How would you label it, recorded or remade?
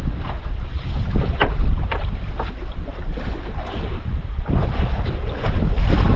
recorded